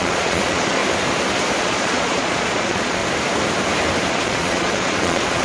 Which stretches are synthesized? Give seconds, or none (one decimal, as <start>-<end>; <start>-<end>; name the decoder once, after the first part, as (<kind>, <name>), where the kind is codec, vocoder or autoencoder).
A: 0.0-0.8 (vocoder, Vocos); 1.6-3.0; 4.1-5.4